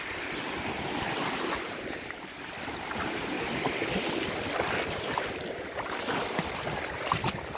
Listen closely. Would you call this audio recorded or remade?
recorded